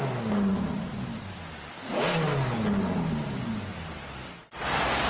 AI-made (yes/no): no